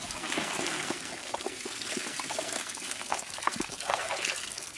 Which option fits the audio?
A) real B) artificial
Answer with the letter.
B